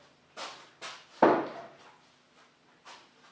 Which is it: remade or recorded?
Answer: recorded